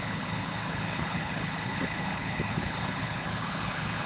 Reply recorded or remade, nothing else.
remade